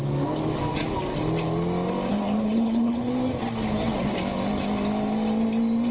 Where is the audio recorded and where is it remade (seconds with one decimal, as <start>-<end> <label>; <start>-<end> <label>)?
0.0-2.1 recorded; 2.1-3.1 remade; 3.1-5.9 recorded

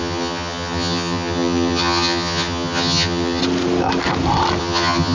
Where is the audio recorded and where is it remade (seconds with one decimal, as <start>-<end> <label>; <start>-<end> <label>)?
0.0-3.4 remade; 3.4-4.6 recorded; 4.6-5.1 remade

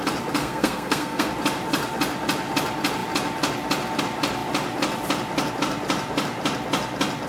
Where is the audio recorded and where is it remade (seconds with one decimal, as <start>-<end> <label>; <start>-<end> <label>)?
0.0-0.4 recorded; 0.4-1.3 remade; 1.3-7.3 recorded

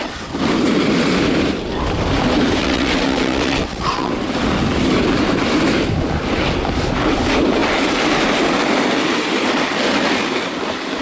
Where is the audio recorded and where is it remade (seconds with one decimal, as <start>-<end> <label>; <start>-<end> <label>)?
0.0-2.6 recorded; 2.6-4.1 remade; 4.1-11.0 recorded